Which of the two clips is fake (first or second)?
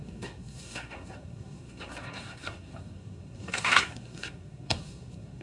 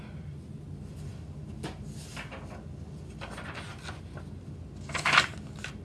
first